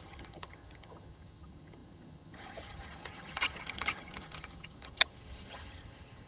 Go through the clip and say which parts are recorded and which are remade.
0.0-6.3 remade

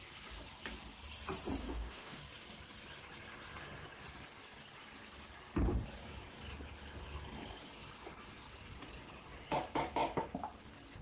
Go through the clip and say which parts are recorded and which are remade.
0.0-1.6 recorded; 1.6-2.2 remade; 2.2-11.0 recorded